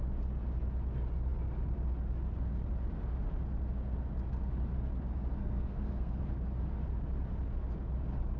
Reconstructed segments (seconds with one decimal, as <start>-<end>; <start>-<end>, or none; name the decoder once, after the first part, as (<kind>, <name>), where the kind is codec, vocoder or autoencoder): 5.4-6.2 (codec, SNAC)